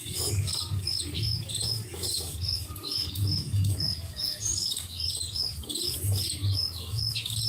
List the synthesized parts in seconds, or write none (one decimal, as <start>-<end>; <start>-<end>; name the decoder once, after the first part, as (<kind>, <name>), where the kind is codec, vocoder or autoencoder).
0.0-7.5 (codec, DAC)